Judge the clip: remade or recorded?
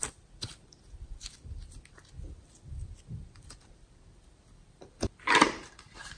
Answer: remade